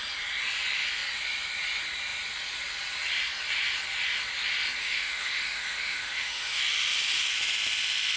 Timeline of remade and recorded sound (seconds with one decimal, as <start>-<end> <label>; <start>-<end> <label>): 0.0-4.8 recorded; 4.8-6.6 remade; 6.6-8.2 recorded